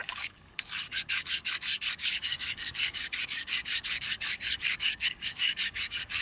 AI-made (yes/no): yes